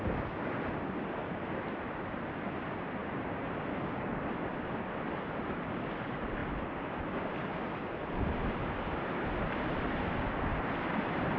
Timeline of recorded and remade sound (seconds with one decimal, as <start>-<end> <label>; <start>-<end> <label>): 0.0-11.4 recorded